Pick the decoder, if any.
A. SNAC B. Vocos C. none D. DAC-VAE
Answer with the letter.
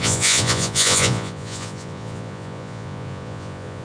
B